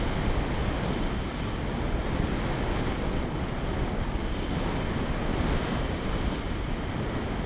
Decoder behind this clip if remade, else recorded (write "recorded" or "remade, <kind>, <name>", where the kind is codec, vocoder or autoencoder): recorded